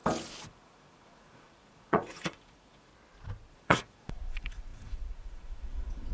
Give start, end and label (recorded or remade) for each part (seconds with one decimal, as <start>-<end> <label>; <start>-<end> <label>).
0.0-0.5 recorded; 0.5-2.9 remade; 2.9-3.5 recorded; 3.5-6.1 remade